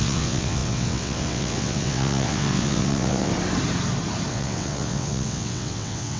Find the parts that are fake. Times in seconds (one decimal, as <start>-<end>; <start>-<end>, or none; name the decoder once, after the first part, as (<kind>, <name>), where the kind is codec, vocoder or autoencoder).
0.0-3.3 (vocoder, WaveNeXt); 4.3-6.2